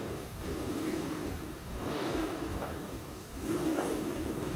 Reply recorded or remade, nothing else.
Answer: remade